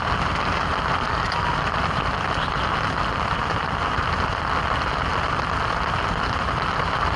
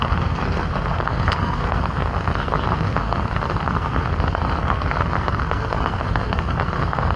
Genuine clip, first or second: first